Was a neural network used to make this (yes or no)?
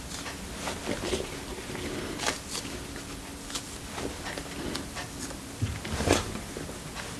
no